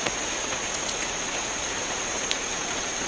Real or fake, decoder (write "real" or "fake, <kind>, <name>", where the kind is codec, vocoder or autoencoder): fake, vocoder, Vocos